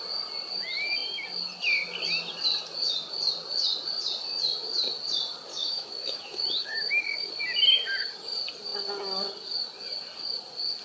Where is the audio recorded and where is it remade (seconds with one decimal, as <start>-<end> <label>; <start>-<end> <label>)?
0.0-5.5 recorded; 5.5-7.3 remade; 7.3-10.8 recorded